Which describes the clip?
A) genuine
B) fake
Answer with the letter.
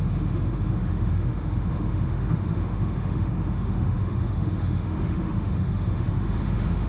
B